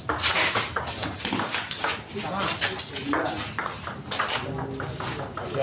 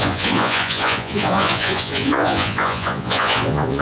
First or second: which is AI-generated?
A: second